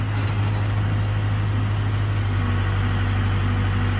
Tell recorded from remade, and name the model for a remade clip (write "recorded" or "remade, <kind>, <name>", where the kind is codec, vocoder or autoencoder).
recorded